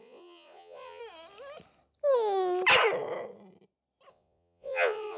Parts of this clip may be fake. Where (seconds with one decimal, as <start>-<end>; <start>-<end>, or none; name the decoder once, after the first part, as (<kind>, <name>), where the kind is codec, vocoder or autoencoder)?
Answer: 0.0-1.0 (vocoder, Vocos); 4.1-5.2